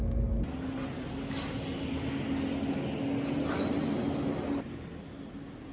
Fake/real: real